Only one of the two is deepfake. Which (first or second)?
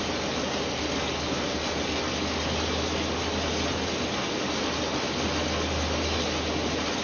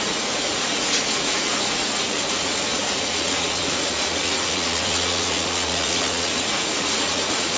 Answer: second